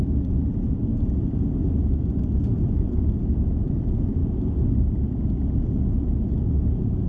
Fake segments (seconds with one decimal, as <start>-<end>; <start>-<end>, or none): 0.9-3.0